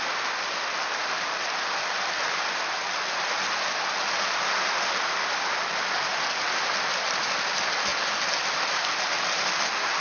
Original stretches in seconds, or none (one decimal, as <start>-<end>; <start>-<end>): 0.0-10.0